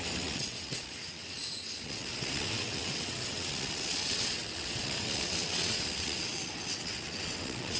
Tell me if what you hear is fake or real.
fake